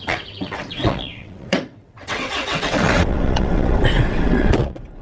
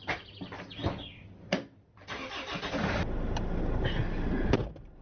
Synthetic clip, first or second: first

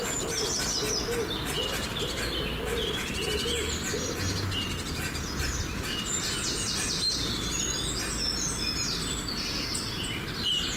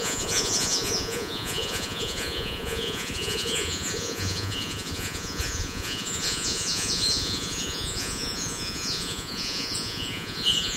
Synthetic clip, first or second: second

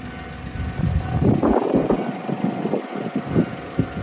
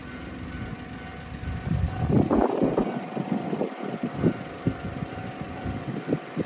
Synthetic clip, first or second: second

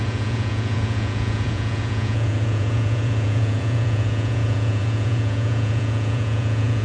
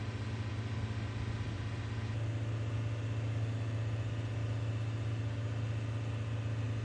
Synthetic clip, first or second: first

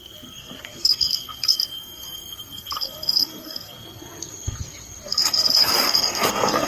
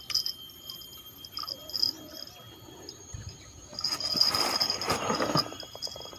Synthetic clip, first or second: first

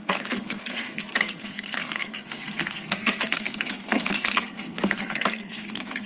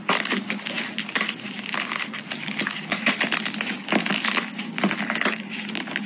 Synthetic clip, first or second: first